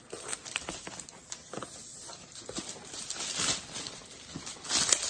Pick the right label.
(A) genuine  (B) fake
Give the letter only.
A